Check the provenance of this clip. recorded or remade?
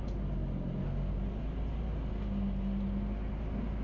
recorded